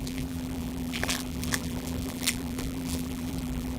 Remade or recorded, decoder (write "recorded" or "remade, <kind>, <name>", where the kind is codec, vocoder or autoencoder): remade, vocoder, BigVGAN v2